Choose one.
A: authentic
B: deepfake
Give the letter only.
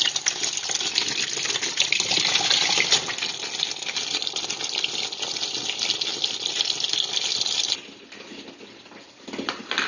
A